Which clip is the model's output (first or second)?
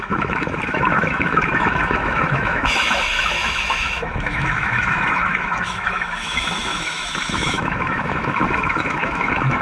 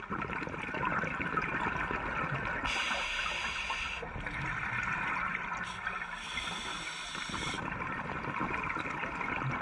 first